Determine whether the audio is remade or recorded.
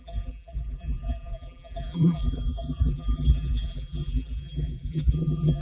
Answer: remade